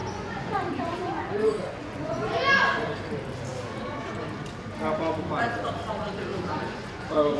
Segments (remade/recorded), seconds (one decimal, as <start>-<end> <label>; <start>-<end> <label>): 0.0-2.9 remade; 2.9-6.3 recorded; 6.3-7.4 remade

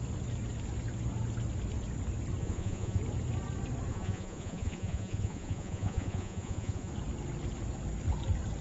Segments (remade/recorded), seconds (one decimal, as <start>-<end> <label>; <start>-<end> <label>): 0.0-2.4 recorded; 2.4-3.0 remade; 3.0-3.9 recorded; 3.9-6.9 remade; 6.9-8.6 recorded

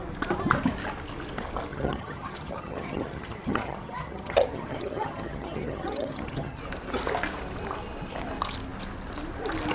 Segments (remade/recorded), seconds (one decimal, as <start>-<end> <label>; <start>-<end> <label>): 0.0-1.7 recorded; 1.7-6.6 remade; 6.6-9.7 recorded